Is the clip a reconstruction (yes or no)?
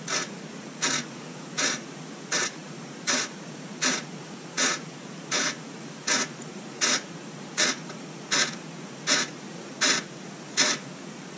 yes